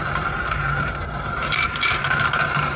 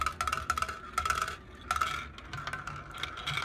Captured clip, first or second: second